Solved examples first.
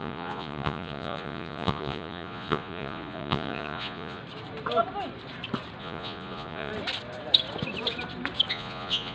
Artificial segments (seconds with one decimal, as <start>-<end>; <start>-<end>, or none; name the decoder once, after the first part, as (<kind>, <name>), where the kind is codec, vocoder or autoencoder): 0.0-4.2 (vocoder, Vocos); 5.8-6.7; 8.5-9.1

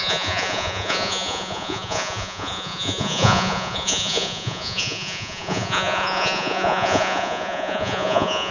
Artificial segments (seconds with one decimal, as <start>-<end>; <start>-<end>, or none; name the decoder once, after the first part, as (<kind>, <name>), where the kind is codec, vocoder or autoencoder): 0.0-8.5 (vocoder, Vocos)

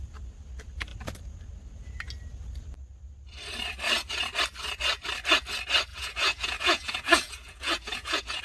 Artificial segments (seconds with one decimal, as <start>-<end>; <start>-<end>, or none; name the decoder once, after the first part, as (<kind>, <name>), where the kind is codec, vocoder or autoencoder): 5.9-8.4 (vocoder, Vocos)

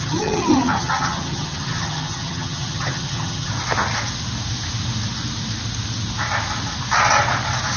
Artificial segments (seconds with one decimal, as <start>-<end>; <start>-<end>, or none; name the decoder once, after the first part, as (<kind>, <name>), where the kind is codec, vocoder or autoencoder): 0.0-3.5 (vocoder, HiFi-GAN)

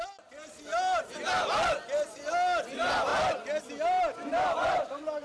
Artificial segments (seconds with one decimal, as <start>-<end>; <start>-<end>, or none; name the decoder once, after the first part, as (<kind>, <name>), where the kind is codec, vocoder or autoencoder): none